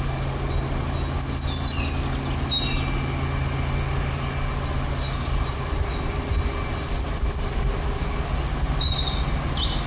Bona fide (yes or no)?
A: yes